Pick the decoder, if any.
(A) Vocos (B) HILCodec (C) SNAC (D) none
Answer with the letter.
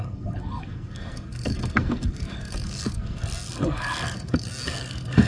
C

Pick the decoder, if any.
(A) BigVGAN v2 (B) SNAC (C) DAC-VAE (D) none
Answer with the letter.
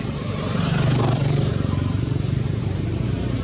A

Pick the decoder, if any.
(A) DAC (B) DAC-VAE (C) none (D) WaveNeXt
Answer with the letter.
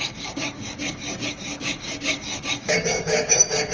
A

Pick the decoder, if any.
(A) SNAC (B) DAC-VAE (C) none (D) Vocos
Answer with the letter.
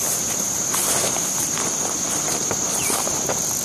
C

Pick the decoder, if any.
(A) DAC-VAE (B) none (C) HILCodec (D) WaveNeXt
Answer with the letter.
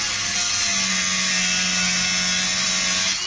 B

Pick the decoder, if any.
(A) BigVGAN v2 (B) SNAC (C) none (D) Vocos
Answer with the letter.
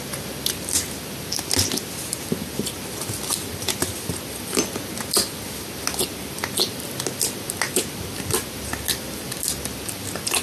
C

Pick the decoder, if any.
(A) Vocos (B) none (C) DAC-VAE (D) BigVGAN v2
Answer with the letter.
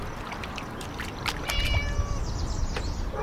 B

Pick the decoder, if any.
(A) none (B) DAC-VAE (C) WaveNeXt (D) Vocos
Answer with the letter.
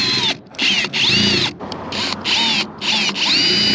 A